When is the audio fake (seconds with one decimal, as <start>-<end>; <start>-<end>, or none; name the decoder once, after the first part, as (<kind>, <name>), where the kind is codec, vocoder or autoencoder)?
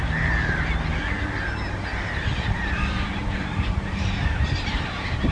1.9-5.3 (vocoder, BigVGAN v2)